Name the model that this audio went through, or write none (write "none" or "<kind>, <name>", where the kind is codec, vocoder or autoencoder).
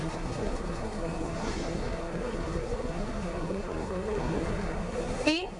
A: codec, SNAC